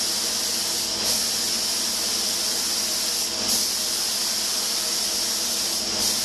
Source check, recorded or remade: recorded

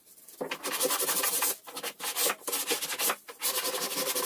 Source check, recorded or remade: recorded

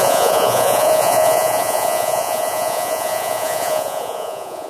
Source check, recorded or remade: remade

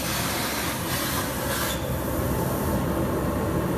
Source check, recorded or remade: recorded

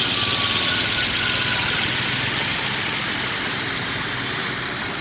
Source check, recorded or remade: recorded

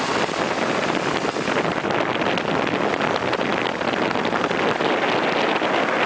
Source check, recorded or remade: recorded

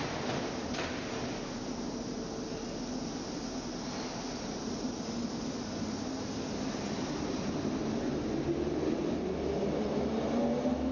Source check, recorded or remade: recorded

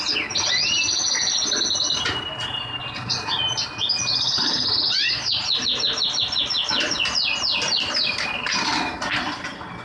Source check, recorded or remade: recorded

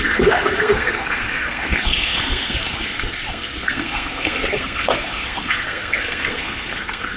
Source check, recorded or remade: remade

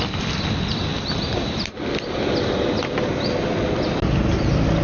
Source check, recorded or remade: recorded